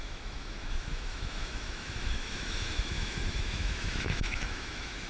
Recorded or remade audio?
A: remade